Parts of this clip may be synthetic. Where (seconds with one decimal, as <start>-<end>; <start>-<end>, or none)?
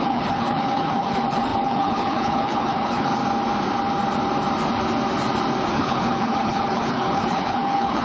0.0-3.2; 5.8-8.0